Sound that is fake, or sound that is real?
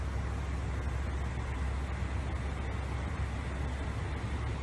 real